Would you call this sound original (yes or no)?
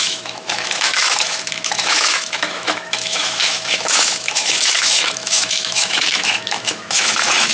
no